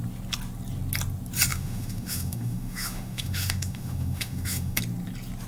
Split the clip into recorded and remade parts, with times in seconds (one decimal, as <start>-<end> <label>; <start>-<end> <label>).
0.0-1.5 recorded; 1.5-4.8 remade; 4.8-5.5 recorded

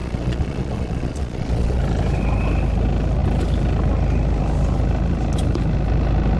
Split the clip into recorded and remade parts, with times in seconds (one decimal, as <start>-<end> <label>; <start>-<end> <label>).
0.0-1.8 remade; 1.8-6.4 recorded

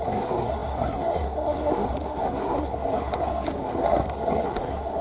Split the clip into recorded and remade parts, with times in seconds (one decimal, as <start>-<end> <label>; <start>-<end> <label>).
0.0-5.0 remade

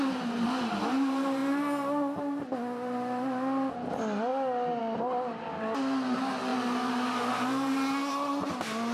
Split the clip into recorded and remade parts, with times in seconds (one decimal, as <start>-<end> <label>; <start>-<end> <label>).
0.0-8.9 recorded